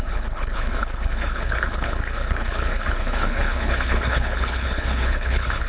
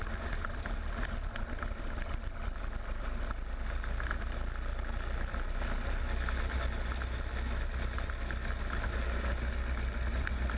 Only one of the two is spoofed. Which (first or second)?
first